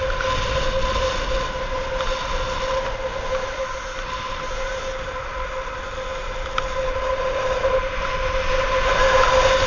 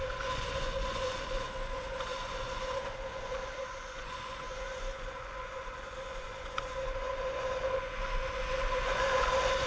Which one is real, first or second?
first